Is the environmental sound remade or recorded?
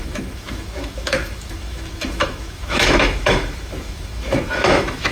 remade